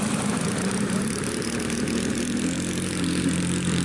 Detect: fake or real fake